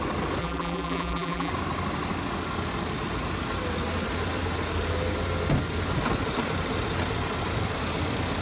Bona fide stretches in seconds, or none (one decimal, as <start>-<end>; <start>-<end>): 0.0-0.4; 1.5-8.4